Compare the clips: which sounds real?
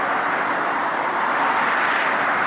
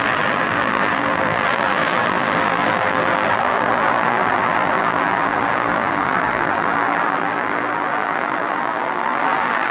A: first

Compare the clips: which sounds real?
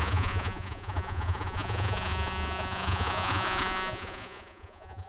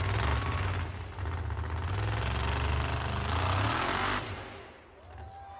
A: second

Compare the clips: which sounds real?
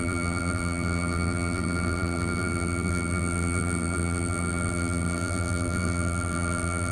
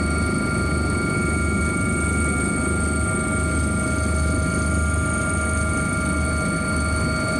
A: second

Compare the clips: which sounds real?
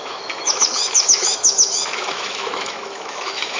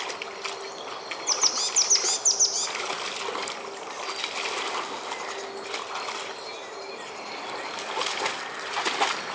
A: second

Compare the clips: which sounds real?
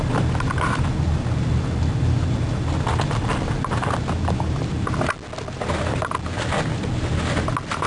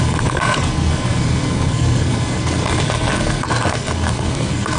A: first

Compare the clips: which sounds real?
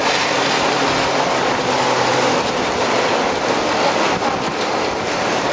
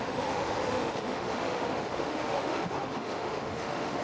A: first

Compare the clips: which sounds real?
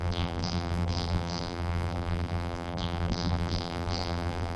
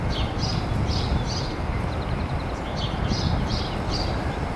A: second